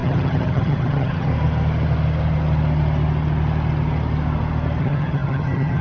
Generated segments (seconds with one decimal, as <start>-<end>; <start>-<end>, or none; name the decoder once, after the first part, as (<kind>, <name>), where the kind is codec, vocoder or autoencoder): 0.0-1.3 (vocoder, HiFi-GAN); 4.8-5.8